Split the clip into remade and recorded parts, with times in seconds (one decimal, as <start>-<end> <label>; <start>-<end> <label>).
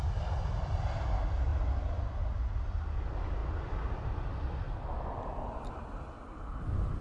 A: 0.0-7.0 recorded